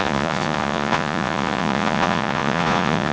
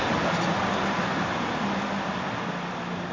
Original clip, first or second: second